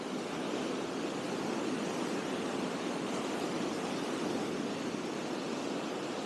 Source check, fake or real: real